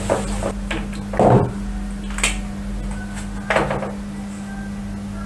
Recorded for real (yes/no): yes